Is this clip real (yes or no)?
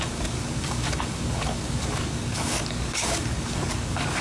no